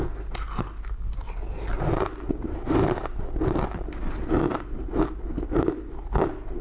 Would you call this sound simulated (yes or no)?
no